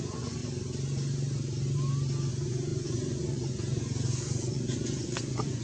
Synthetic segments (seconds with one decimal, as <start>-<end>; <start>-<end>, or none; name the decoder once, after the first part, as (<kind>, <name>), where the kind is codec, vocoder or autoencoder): 0.0-0.4 (vocoder, Vocos); 2.3-5.6

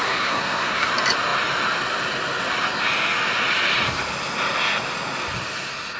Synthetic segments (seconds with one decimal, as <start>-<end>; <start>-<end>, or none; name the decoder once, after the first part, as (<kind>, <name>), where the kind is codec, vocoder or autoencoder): 0.0-0.9 (codec, SNAC)

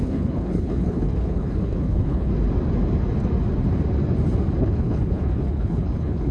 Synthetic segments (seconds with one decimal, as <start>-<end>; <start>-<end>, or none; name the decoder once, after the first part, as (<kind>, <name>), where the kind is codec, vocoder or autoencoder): 0.0-2.3 (codec, HILCodec); 4.6-6.3

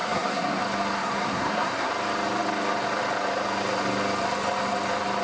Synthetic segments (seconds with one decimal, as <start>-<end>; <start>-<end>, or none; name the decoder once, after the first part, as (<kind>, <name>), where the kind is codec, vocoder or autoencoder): 0.0-0.6 (codec, SNAC); 1.0-1.9